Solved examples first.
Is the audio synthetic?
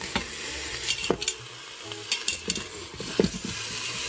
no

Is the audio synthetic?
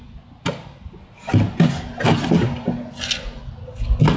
no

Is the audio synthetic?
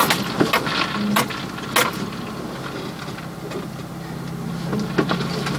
no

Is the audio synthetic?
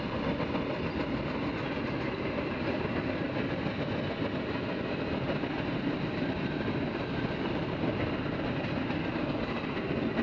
no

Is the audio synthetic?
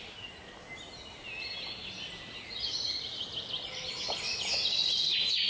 no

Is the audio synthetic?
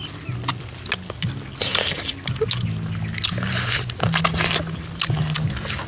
no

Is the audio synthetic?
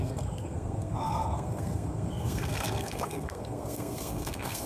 yes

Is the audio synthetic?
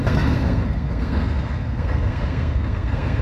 yes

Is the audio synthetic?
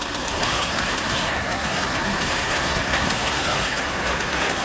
yes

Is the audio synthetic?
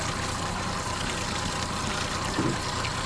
no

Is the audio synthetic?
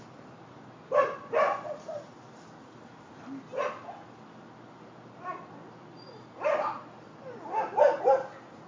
no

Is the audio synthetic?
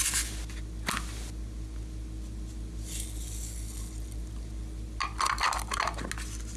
no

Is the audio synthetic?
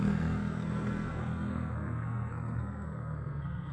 yes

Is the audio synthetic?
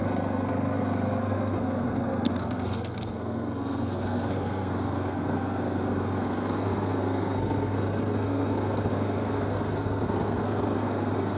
yes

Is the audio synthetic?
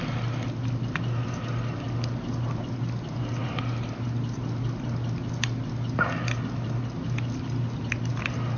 no